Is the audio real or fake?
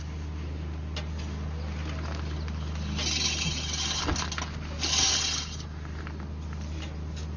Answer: real